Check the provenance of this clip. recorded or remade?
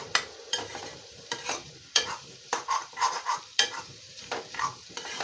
remade